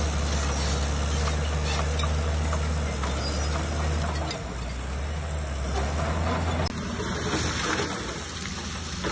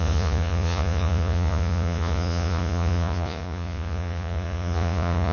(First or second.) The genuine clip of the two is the first